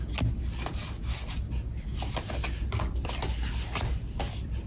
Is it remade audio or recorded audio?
recorded